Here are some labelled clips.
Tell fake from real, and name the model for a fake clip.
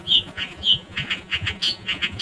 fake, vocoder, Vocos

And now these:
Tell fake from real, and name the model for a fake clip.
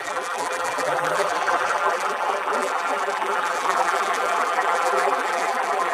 fake, vocoder, BigVGAN v2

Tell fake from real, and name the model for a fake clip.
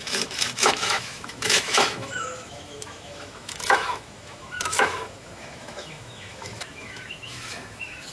fake, autoencoder, DAC-VAE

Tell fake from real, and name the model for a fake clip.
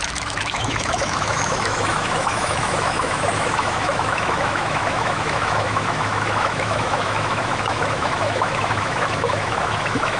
fake, autoencoder, DAC-VAE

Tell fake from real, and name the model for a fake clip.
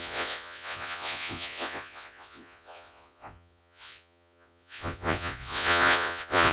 fake, vocoder, Vocos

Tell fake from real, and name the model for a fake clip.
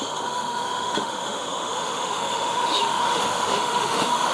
fake, autoencoder, DAC-VAE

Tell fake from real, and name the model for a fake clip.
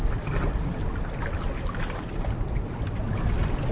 real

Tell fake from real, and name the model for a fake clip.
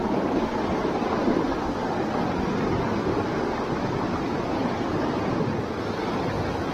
real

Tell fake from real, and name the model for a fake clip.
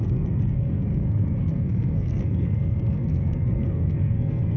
fake, codec, SNAC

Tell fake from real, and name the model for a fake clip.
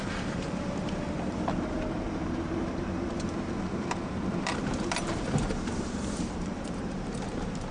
fake, vocoder, BigVGAN v2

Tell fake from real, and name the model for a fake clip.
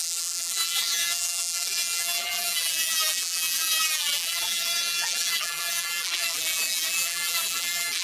fake, vocoder, BigVGAN v2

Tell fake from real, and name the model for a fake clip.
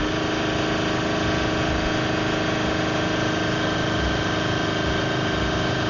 real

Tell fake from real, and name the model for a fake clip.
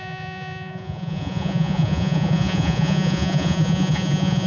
fake, vocoder, Vocos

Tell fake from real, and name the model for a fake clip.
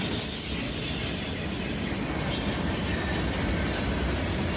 real